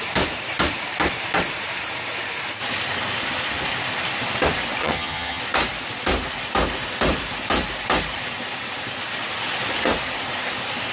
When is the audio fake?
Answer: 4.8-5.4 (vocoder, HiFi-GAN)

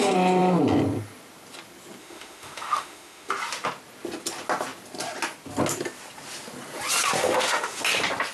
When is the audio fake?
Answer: 2.0-3.3 (autoencoder, DAC-VAE); 7.2-7.8

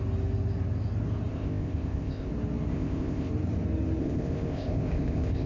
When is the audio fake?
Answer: 1.3-2.3 (codec, ZipCodec); 2.7-3.3; 4.0-5.5